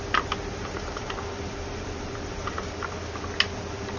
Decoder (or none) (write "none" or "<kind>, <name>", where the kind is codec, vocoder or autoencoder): none